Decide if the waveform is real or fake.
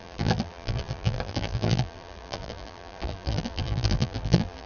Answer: fake